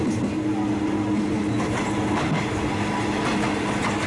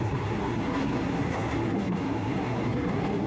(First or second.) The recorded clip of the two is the first